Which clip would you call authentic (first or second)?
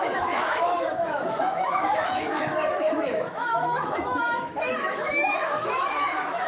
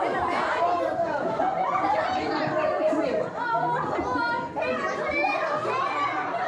second